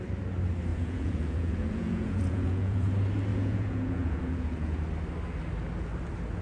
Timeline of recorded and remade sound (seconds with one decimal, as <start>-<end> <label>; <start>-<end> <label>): 0.0-0.7 recorded; 0.7-2.9 remade; 2.9-3.3 recorded; 3.3-4.8 remade; 4.8-6.4 recorded